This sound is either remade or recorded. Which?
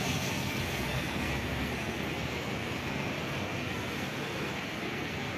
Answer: remade